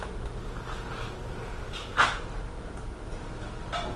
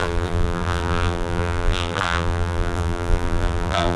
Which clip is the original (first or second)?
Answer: first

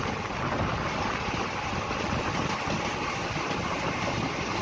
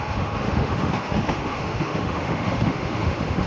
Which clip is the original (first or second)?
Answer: first